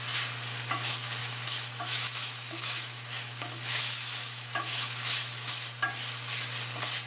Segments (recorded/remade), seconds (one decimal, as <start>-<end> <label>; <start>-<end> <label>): 0.0-1.2 recorded; 1.2-5.5 remade; 5.5-7.1 recorded